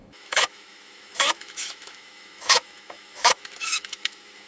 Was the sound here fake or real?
fake